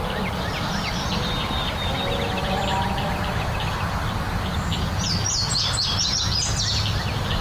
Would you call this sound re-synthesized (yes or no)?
no